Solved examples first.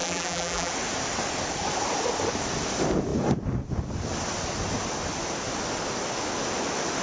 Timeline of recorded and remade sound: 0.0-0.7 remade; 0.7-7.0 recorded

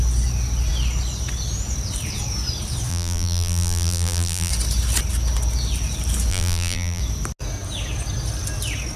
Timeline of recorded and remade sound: 0.0-2.9 recorded; 2.9-4.5 remade; 4.5-6.3 recorded; 6.3-7.0 remade; 7.0-9.0 recorded